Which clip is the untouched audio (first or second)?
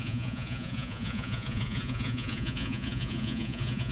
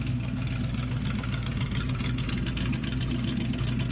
second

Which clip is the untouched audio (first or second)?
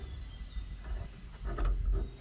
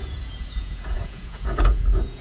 first